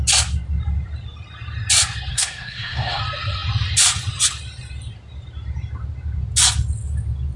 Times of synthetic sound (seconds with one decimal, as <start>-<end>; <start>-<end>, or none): 2.1-3.0

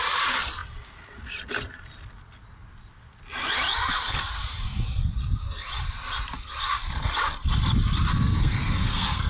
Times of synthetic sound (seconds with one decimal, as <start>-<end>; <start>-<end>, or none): 8.1-9.3